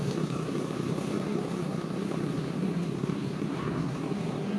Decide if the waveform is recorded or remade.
remade